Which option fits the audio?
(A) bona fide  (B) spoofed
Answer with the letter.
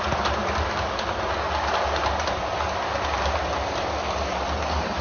A